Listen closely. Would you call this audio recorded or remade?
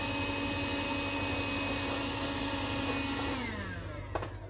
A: recorded